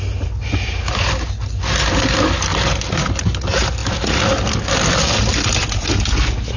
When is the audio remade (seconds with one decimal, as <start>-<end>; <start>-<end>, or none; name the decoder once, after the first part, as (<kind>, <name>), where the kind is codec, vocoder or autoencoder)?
3.8-4.6 (vocoder, BigVGAN v2)